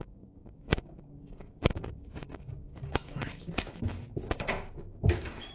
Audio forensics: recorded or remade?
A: remade